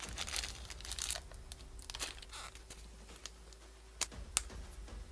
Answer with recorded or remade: recorded